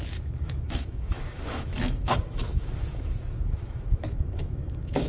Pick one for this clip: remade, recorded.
remade